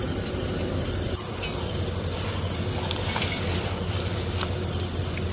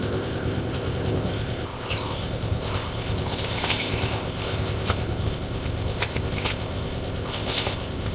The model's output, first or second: second